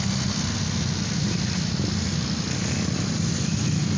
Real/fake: real